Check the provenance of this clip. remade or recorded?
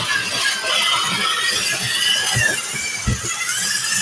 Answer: recorded